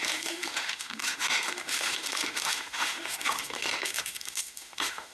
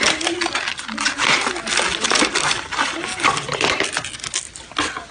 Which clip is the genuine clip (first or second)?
second